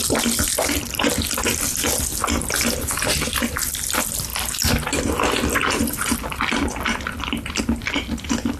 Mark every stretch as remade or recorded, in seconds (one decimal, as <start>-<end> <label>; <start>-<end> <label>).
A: 0.0-8.6 recorded